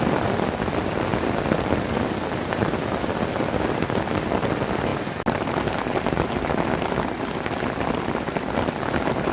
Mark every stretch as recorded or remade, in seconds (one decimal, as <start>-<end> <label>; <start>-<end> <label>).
0.0-9.3 recorded